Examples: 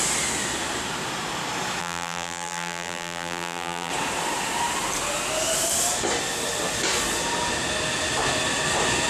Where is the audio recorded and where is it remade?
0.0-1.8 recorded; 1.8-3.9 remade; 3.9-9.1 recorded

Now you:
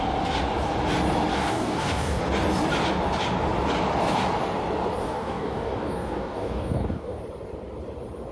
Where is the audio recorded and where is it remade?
0.0-1.3 recorded; 1.3-2.2 remade; 2.2-5.0 recorded; 5.0-7.2 remade; 7.2-8.3 recorded

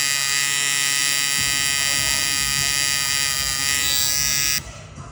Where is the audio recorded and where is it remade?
0.0-5.1 recorded

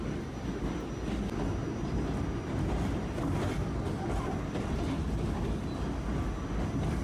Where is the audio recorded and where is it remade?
0.0-1.6 recorded; 1.6-4.9 remade; 4.9-7.0 recorded

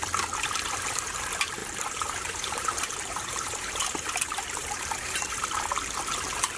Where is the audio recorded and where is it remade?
0.0-1.6 recorded; 1.6-5.6 remade; 5.6-6.6 recorded